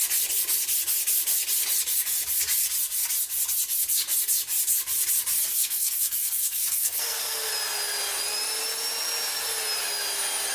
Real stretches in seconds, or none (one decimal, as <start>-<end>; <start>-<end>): 0.0-5.6; 7.5-10.5